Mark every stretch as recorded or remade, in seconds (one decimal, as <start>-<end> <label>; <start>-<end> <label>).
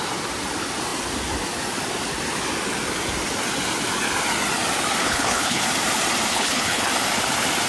0.0-5.0 recorded; 5.0-5.6 remade; 5.6-6.3 recorded; 6.3-6.9 remade; 6.9-7.7 recorded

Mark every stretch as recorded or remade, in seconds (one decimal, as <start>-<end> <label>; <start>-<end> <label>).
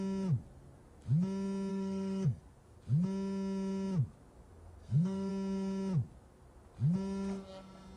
0.0-1.7 recorded; 1.7-2.4 remade; 2.4-4.8 recorded; 4.8-5.3 remade; 5.3-8.0 recorded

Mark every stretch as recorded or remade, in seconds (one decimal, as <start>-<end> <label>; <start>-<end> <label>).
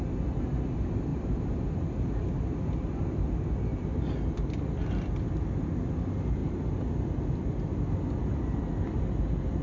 0.0-1.1 recorded; 1.1-2.2 remade; 2.2-9.6 recorded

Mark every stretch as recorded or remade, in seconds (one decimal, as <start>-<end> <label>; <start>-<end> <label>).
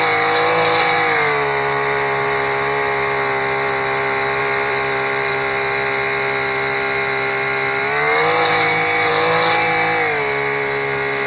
0.0-4.4 recorded; 4.4-5.3 remade; 5.3-11.3 recorded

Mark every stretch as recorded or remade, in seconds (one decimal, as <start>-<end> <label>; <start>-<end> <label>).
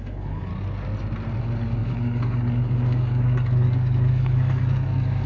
0.0-0.5 remade; 0.5-1.4 recorded; 1.4-5.3 remade